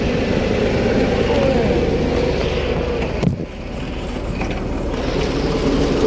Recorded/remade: recorded